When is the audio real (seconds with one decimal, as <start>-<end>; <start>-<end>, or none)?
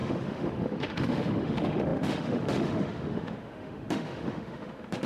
none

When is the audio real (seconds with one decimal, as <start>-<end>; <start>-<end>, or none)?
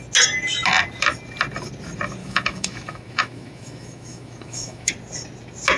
0.0-2.2; 4.9-5.8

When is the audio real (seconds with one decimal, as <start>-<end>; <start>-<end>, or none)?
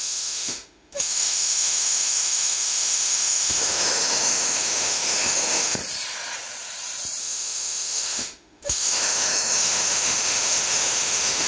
5.8-7.2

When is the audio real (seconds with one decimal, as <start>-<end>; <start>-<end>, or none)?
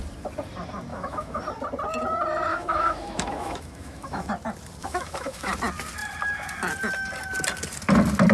0.0-0.9; 1.4-2.5; 4.3-4.8; 5.5-8.3